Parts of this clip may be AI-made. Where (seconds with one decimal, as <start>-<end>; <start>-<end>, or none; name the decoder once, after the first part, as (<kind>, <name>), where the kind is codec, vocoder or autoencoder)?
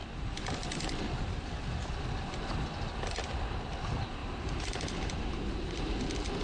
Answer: 4.2-6.0 (vocoder, BigVGAN v2)